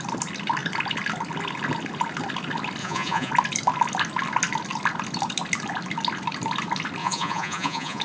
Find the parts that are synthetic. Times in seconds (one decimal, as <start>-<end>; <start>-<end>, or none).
2.8-3.3; 7.0-8.0